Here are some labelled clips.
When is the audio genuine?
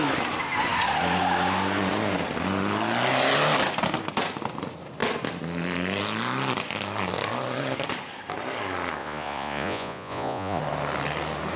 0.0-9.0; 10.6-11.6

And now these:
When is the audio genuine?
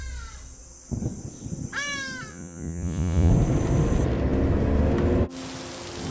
0.0-2.3; 3.3-6.1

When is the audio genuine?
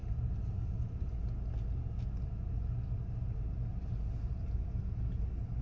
0.0-5.6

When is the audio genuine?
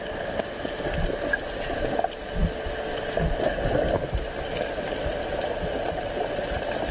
0.0-6.9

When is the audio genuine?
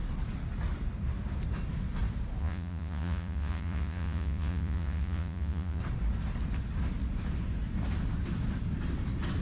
0.0-2.4; 5.8-9.4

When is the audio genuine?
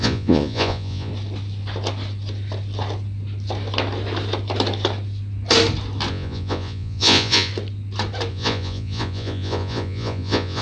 1.1-6.1; 7.5-8.3